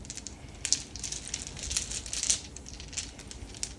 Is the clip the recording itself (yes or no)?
yes